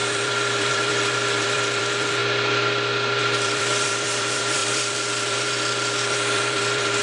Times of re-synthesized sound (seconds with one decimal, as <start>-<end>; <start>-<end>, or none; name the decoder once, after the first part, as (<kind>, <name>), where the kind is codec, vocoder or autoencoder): 0.0-2.2 (vocoder, BigVGAN v2); 3.2-7.0